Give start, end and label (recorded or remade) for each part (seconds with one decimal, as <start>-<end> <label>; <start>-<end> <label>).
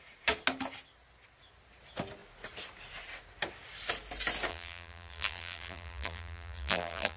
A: 0.0-4.5 recorded; 4.5-7.2 remade